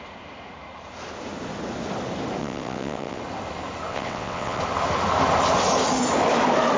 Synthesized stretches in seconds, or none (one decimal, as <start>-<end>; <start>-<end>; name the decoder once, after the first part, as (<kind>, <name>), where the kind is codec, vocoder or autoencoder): 2.4-3.2 (vocoder, WaveNeXt); 3.9-4.6